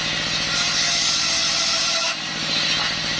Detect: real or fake real